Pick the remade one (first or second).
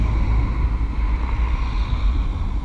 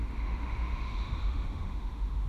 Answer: second